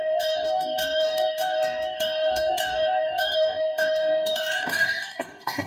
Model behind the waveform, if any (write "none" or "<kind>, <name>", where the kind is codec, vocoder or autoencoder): codec, DAC